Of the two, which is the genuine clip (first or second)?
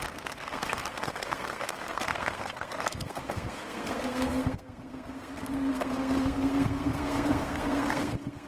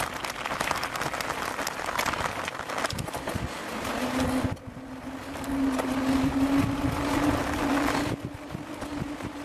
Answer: second